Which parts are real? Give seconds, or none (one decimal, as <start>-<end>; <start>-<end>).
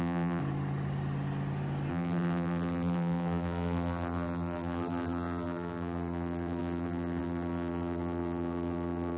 0.4-1.9